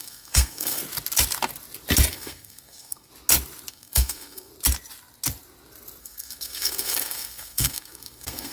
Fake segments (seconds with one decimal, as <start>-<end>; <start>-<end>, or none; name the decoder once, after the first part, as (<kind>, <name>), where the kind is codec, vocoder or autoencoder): 0.0-0.8 (codec, SNAC); 2.1-3.1; 3.7-4.5; 6.0-8.5